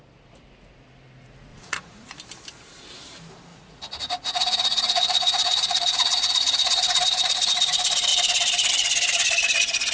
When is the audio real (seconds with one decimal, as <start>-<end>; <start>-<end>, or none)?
0.0-1.5; 2.1-3.5; 7.5-9.9